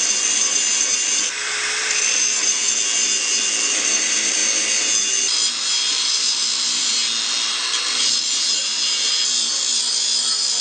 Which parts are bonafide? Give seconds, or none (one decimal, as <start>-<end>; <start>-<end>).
4.4-5.0; 6.9-8.1